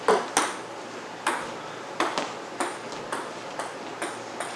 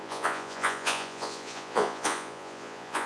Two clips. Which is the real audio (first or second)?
first